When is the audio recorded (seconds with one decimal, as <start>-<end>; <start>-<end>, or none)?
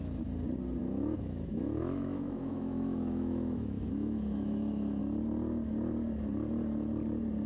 0.0-0.8; 5.0-7.5